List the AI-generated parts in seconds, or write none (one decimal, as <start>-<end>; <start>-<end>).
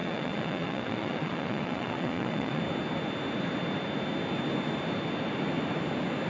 0.0-2.6